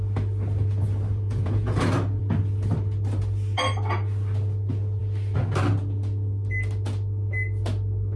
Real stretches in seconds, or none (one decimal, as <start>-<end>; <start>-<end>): 0.0-1.1; 1.8-8.2